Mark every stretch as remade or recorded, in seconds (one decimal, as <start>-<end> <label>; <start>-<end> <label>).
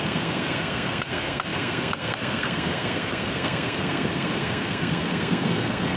0.0-6.0 remade